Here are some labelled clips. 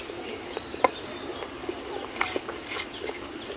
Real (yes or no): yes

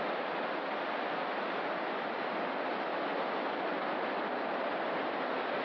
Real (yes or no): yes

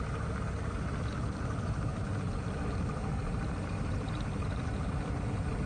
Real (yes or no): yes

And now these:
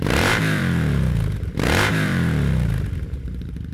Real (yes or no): no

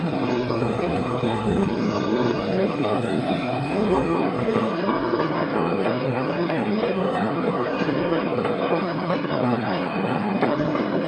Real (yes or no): no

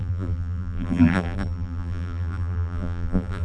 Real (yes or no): no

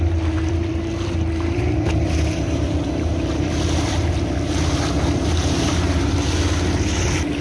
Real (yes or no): yes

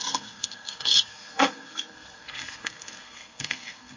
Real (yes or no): no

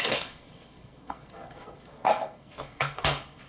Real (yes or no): no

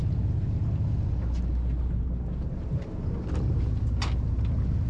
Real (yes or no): yes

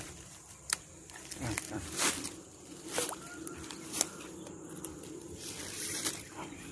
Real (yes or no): no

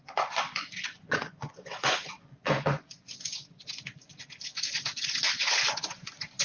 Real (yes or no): no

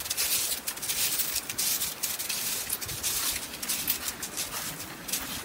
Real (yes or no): yes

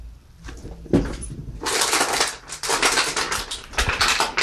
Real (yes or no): yes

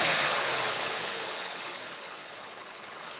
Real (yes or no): no